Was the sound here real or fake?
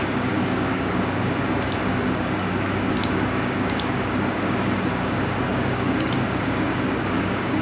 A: fake